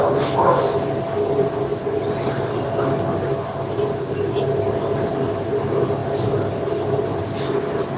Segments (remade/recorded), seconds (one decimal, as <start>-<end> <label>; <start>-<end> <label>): 0.0-8.0 recorded